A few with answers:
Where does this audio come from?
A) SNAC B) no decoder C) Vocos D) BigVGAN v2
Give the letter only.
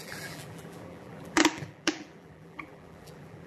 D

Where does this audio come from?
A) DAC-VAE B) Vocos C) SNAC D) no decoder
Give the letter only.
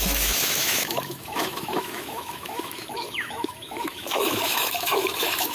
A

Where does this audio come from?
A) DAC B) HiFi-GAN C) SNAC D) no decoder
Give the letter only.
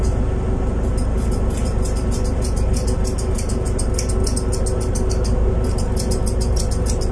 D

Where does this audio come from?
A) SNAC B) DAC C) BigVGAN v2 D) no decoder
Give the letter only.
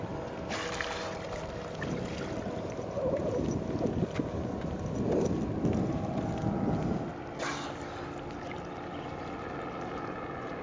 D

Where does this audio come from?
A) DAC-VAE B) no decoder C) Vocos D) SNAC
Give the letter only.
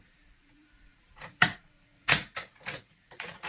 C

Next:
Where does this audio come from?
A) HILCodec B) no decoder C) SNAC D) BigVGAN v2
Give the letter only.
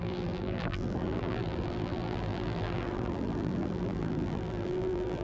D